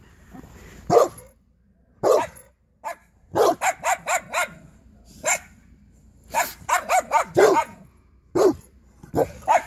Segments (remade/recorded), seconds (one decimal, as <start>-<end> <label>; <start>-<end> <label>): 0.0-7.5 recorded; 7.5-8.1 remade; 8.1-9.7 recorded